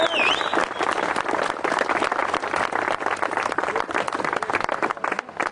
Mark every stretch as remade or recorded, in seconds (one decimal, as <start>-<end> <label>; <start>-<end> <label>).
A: 0.0-5.5 recorded